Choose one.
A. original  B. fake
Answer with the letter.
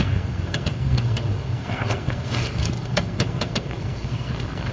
B